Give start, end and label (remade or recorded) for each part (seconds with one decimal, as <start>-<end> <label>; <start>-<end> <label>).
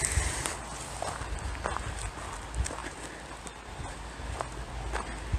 0.0-5.4 recorded